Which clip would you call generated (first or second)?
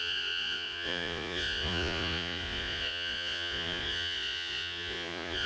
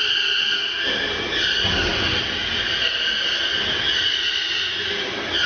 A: first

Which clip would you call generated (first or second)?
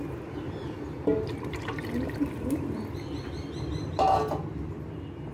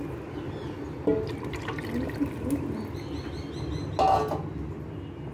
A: first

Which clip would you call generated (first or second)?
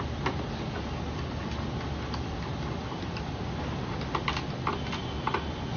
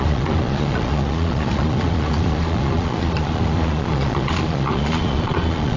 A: second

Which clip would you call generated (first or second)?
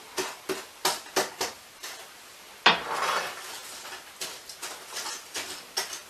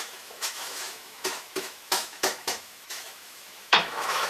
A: second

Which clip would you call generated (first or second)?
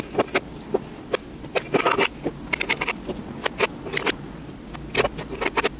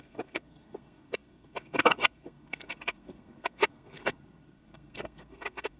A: second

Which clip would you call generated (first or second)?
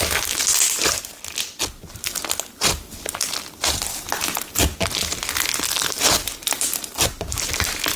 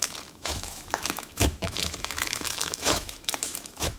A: second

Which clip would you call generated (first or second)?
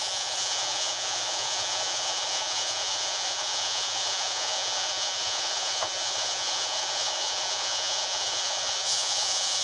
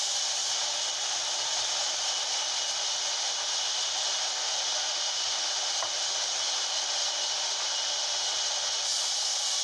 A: first